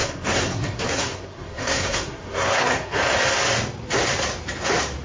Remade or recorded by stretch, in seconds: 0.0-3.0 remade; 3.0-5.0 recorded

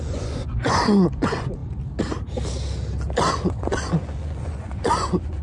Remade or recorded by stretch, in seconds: 0.0-1.6 remade; 1.6-3.3 recorded; 3.3-5.4 remade

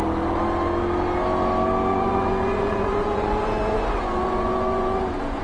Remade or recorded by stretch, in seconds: 0.0-1.9 recorded; 1.9-5.4 remade

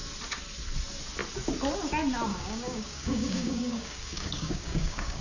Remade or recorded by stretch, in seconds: 0.0-2.3 recorded; 2.3-5.2 remade

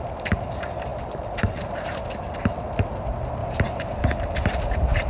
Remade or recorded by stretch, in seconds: 0.0-0.9 recorded; 0.9-2.2 remade; 2.2-3.4 recorded; 3.4-4.0 remade; 4.0-5.1 recorded